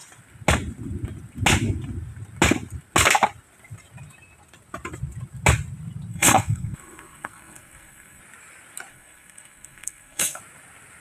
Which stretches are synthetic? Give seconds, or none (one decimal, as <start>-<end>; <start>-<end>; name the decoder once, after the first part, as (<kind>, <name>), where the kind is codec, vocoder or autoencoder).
6.1-8.2 (codec, SNAC); 8.9-10.4

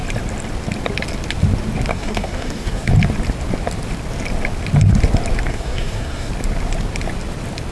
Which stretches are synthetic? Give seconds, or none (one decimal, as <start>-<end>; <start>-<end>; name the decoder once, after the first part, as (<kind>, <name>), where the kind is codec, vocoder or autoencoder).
1.9-2.9 (codec, SNAC); 5.5-6.3

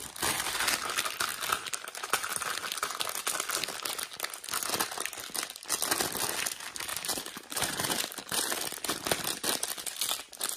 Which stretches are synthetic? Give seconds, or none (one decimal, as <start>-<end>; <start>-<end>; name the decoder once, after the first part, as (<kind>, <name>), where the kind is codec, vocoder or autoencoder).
6.9-8.6 (vocoder, BigVGAN v2)

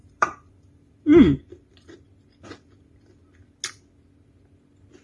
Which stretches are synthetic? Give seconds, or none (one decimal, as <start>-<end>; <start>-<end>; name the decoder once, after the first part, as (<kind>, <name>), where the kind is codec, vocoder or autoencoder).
0.0-0.9 (vocoder, BigVGAN v2)

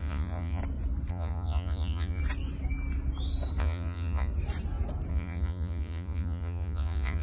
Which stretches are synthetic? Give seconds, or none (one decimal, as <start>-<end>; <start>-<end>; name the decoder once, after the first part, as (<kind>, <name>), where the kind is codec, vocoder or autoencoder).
0.0-0.6 (vocoder, Vocos); 1.1-2.2; 3.6-4.3; 5.1-7.2

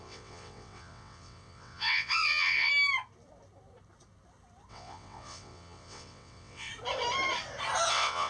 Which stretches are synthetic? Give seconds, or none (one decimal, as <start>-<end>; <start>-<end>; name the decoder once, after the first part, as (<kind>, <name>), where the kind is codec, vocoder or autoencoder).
0.0-2.7 (vocoder, WaveNeXt); 4.7-6.7; 7.9-8.3

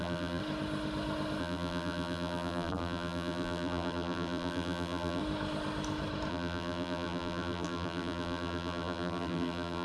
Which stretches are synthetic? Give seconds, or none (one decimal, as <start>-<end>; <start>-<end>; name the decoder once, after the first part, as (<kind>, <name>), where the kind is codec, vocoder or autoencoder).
0.0-0.4 (vocoder, BigVGAN v2); 1.4-5.2; 6.3-9.8